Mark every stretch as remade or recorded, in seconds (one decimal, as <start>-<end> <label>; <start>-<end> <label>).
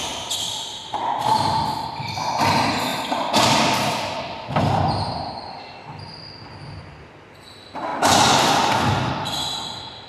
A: 0.0-2.9 recorded; 2.9-7.1 remade; 7.1-10.1 recorded